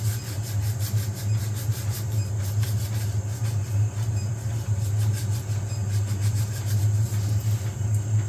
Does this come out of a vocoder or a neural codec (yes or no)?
no